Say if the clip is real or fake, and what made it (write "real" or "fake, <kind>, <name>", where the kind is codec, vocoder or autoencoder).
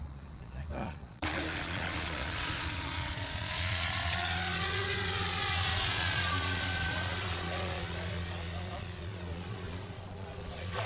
fake, vocoder, Vocos